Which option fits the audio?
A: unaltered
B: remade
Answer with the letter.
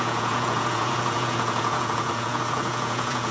B